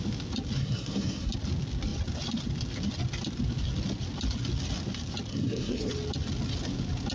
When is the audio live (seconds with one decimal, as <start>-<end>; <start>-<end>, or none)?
0.0-0.6; 1.3-5.3; 5.9-7.1